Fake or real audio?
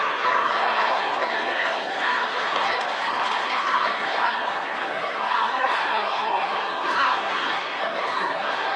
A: fake